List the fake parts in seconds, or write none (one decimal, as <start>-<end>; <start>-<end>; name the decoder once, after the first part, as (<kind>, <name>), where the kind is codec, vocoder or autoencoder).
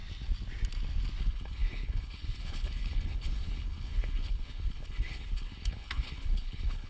1.2-6.9 (codec, HILCodec)